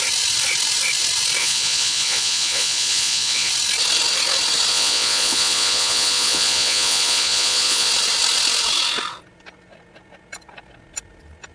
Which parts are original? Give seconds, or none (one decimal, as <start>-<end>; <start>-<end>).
0.0-1.4; 3.5-4.7; 7.9-11.5